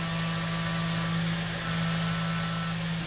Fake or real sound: real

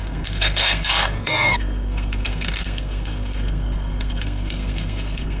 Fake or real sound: fake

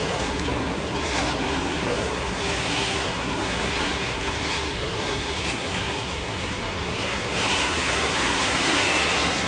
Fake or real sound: fake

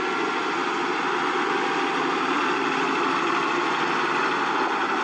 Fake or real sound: real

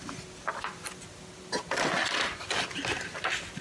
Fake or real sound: real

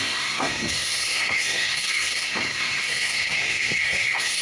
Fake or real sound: fake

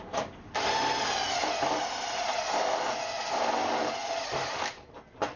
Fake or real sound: real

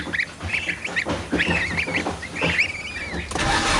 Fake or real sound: real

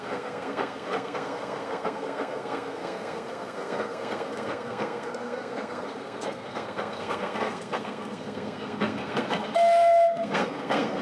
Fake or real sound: fake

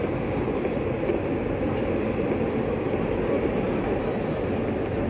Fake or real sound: real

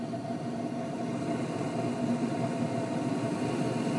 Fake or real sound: real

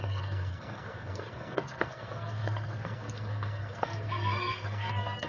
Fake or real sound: fake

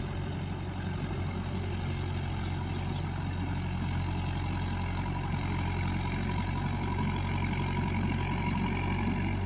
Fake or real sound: real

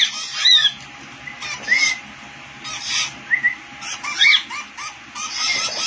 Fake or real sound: real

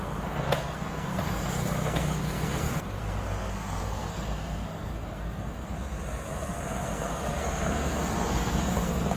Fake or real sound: fake